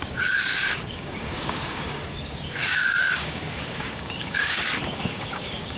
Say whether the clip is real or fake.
fake